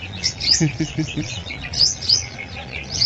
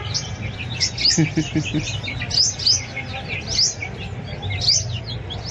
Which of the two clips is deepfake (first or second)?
first